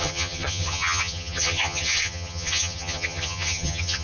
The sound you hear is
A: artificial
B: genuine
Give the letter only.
A